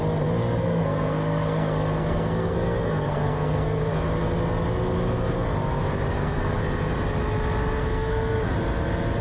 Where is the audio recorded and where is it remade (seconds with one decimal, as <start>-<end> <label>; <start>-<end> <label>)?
0.0-0.4 recorded; 0.4-3.8 remade; 3.8-6.1 recorded; 6.1-6.6 remade; 6.6-7.8 recorded; 7.8-8.4 remade; 8.4-9.2 recorded